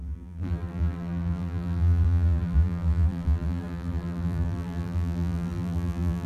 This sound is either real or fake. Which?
fake